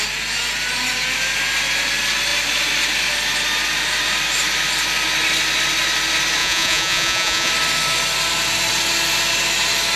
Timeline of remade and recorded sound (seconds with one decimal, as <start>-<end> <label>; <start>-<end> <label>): 0.0-6.4 recorded; 6.4-7.5 remade; 7.5-10.0 recorded